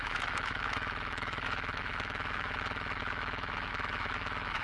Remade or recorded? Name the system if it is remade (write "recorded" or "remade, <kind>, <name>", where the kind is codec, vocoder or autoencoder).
remade, autoencoder, DAC-VAE